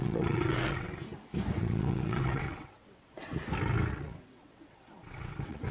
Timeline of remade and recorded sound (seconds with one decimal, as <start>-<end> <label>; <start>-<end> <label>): 0.0-0.9 remade; 0.9-1.6 recorded; 1.6-3.3 remade; 3.3-3.9 recorded; 3.9-5.7 remade